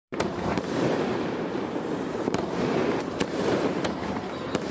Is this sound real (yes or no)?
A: no